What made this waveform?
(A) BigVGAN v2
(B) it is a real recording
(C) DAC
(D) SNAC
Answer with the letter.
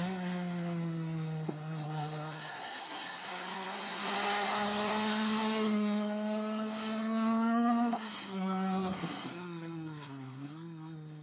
D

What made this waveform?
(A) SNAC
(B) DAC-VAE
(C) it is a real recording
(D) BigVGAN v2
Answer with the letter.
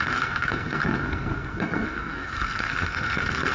A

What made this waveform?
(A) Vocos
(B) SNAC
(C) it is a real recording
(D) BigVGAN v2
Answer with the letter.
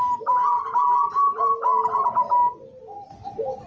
D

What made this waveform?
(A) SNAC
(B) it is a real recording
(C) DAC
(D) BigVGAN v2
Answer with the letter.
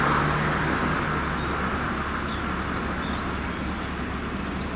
B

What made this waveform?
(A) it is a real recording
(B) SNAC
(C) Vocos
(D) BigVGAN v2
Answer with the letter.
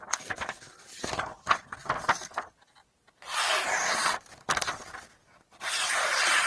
A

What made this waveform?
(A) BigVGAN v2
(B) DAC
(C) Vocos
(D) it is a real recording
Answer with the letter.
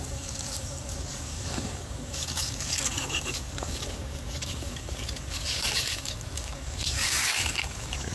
B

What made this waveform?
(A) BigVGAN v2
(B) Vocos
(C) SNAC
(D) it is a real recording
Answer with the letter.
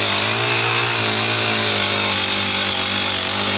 D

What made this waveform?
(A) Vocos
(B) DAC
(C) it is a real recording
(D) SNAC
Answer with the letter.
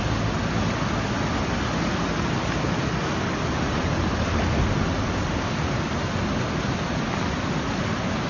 C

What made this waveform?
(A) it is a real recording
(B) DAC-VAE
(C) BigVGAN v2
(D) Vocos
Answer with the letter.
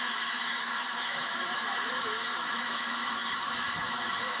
B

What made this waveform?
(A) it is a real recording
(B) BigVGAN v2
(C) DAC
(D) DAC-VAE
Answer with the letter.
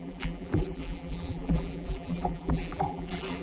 B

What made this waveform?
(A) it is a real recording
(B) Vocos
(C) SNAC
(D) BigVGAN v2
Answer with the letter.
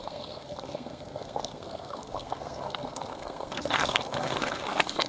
C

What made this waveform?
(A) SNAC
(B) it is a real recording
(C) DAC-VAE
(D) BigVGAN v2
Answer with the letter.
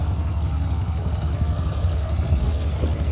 A